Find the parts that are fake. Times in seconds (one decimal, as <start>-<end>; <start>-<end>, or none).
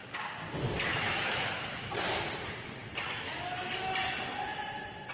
0.9-1.9